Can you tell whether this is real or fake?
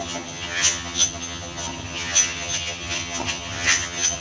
fake